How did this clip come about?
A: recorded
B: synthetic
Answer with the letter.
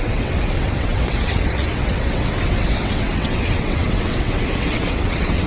B